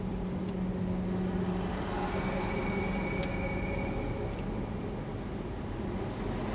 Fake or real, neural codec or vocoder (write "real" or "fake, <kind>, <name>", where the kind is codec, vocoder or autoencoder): real